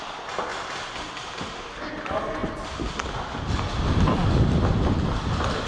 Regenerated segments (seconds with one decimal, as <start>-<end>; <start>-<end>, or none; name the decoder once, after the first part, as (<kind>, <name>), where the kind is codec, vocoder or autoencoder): none